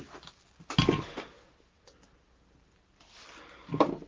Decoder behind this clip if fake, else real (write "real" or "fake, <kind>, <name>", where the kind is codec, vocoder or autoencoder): real